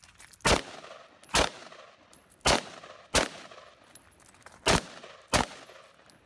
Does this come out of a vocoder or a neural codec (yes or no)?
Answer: no